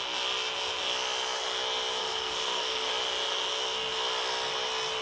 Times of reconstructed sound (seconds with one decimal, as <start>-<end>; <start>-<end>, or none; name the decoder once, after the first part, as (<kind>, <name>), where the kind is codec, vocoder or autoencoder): 2.0-2.9 (codec, SNAC)